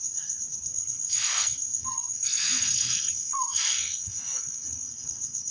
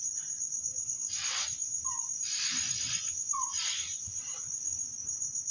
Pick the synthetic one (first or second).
first